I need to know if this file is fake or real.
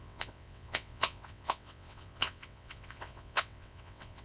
fake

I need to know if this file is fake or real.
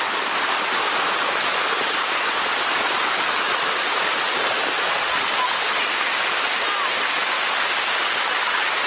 real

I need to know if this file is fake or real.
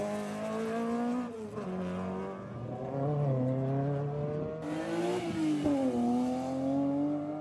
real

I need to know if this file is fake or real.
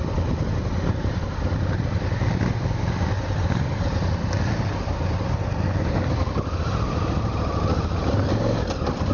real